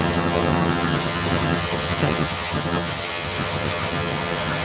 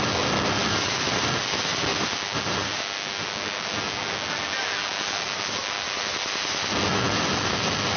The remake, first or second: first